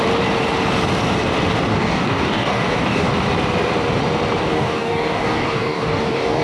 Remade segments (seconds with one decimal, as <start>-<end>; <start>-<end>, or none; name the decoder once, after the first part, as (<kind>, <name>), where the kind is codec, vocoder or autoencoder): 1.7-3.1 (codec, DAC); 4.4-6.4